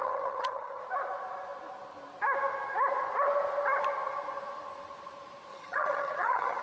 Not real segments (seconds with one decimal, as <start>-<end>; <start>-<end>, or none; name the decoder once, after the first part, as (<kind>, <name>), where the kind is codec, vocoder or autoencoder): 0.0-0.8 (vocoder, HiFi-GAN); 5.5-6.6